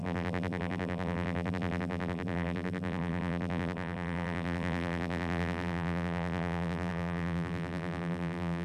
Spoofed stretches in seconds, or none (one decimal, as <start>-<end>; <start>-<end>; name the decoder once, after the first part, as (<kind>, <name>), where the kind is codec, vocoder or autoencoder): 0.0-8.6 (vocoder, BigVGAN v2)